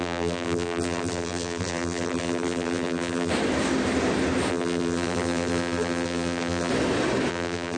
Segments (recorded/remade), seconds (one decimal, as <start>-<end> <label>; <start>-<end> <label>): 0.0-3.3 remade; 3.3-4.5 recorded; 4.5-6.7 remade; 6.7-7.3 recorded; 7.3-7.8 remade